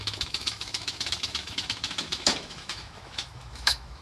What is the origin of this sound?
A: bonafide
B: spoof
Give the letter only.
B